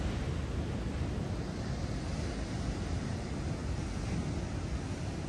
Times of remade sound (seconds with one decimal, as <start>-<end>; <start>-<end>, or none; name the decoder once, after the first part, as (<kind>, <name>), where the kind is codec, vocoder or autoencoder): none